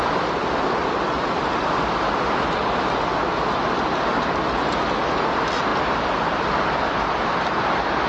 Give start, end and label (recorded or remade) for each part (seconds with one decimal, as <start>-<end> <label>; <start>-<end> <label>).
0.0-5.7 recorded; 5.7-8.1 remade